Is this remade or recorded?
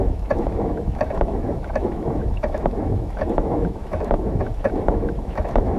remade